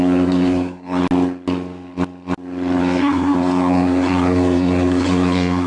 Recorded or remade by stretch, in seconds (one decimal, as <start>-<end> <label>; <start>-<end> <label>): 0.0-1.0 remade; 1.0-2.8 recorded; 2.8-5.7 remade